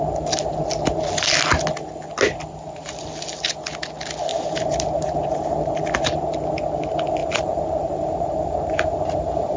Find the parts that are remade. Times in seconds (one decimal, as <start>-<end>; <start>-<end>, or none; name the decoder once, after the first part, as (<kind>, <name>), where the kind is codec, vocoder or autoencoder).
4.3-5.7 (vocoder, BigVGAN v2); 7.2-9.6